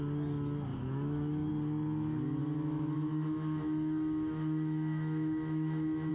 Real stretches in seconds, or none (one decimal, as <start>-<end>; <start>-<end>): 0.0-0.7; 1.5-2.4